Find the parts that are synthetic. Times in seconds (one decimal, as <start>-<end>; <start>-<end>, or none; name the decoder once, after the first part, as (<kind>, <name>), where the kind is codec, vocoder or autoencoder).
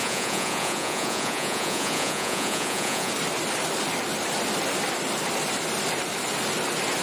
0.0-3.1 (vocoder, Vocos)